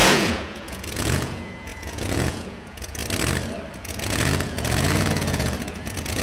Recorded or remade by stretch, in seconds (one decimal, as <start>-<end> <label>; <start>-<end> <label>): 0.0-3.0 remade; 3.0-3.7 recorded; 3.7-6.2 remade